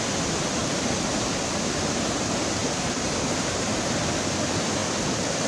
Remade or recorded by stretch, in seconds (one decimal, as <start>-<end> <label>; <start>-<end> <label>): 0.0-0.6 recorded; 0.6-1.3 remade; 1.3-2.6 recorded; 2.6-4.1 remade; 4.1-5.5 recorded